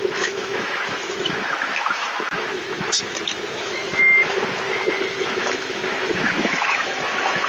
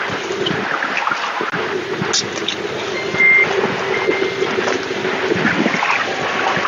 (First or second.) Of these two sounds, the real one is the second